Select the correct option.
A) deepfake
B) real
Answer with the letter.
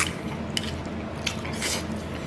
B